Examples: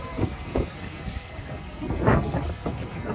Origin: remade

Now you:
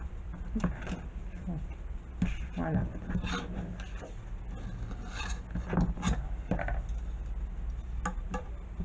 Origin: recorded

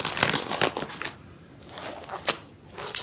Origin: recorded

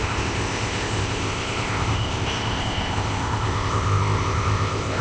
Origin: remade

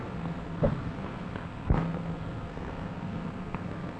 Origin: remade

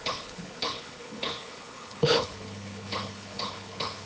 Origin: remade